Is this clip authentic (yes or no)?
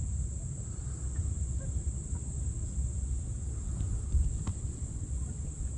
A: yes